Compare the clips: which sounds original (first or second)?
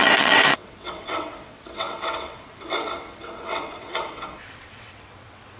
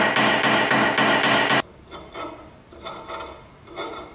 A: second